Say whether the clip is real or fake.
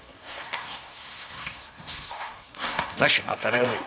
fake